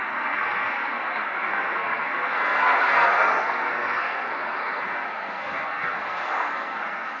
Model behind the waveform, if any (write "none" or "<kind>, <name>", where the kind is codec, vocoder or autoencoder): codec, SNAC